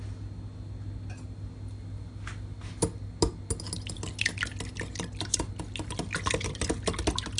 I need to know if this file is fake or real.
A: real